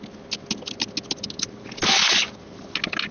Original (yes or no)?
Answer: yes